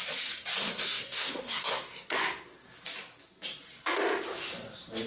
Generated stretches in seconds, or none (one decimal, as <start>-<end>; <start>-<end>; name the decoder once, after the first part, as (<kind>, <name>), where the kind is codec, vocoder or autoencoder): 0.6-2.2 (codec, SNAC)